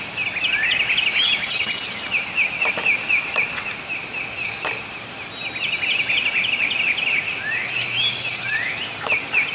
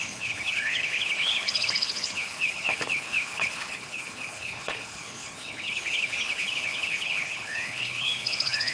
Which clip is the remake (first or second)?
second